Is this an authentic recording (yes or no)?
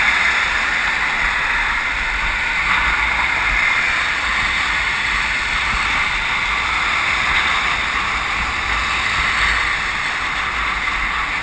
yes